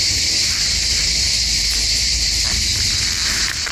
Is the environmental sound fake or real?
fake